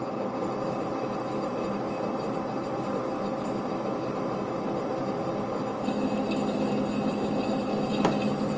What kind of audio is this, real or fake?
real